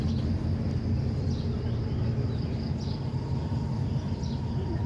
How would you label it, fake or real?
real